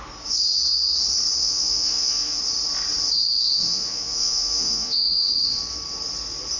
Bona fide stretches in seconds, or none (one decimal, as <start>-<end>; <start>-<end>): 0.0-1.4; 2.4-3.7; 5.2-6.6